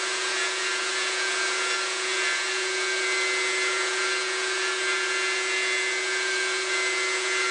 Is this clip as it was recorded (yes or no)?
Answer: no